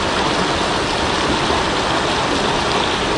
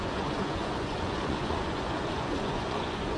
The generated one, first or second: second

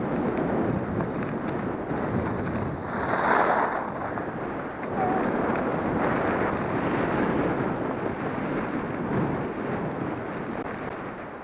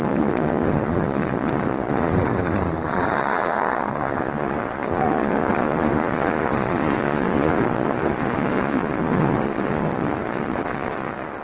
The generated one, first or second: second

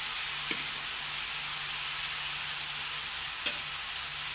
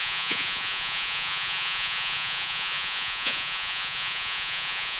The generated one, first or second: second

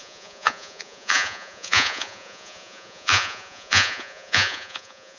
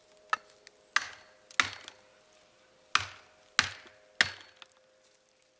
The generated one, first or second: first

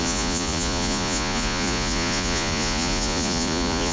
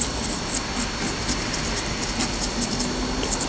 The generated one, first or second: first